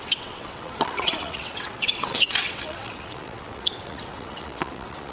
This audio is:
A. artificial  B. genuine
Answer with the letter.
A